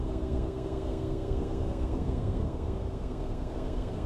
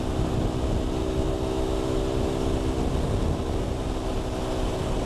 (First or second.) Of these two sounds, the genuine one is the second